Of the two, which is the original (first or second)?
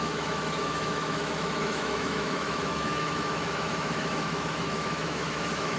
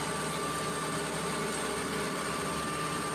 second